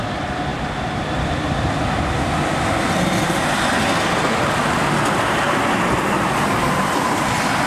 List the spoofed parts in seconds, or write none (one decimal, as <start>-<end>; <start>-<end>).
none

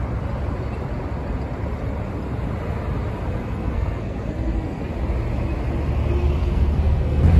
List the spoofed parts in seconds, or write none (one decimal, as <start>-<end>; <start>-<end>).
3.4-4.9; 6.4-7.4

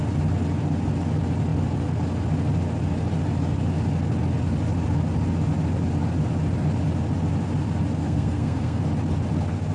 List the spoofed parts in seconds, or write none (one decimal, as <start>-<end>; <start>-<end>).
8.0-8.8